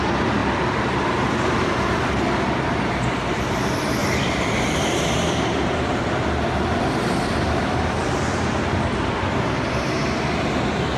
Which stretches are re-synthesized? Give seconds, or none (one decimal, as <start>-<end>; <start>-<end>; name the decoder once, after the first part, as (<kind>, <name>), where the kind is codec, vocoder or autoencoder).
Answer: 0.4-1.8 (vocoder, BigVGAN v2); 4.0-8.8